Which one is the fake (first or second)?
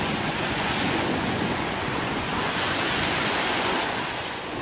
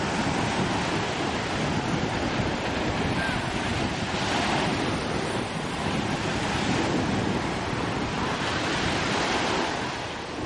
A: first